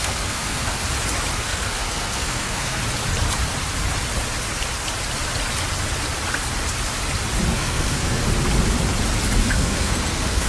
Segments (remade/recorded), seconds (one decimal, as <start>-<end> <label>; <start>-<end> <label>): 0.0-0.8 remade; 0.8-1.3 recorded; 1.3-2.8 remade; 2.8-7.5 recorded; 7.5-8.2 remade; 8.2-9.4 recorded; 9.4-10.5 remade